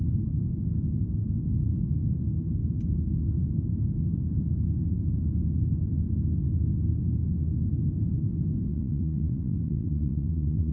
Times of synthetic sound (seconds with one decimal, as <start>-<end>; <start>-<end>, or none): 8.7-10.7